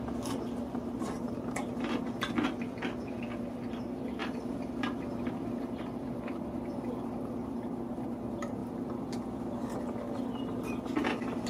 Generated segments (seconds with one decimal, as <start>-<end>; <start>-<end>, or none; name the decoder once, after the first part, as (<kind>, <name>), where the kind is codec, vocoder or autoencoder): none